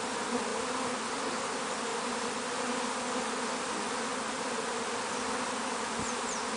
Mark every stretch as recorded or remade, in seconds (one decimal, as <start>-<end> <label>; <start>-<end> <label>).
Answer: 0.0-1.9 recorded; 1.9-2.8 remade; 2.8-4.1 recorded; 4.1-5.7 remade; 5.7-6.6 recorded